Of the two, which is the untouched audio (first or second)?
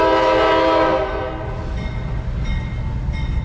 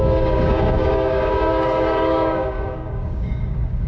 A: first